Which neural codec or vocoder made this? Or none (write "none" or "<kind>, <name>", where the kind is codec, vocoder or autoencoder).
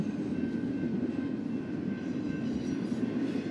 none